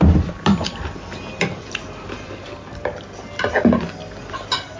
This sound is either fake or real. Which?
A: real